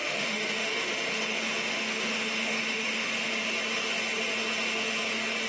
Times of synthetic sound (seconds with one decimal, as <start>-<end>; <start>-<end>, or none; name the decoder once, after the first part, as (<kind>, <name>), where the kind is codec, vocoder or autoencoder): 0.0-3.3 (autoencoder, DAC-VAE)